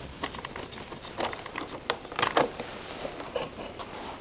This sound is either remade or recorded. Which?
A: recorded